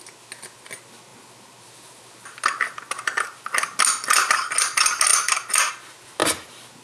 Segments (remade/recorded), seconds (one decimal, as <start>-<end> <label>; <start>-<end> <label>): 0.0-5.1 recorded; 5.1-5.7 remade; 5.7-6.8 recorded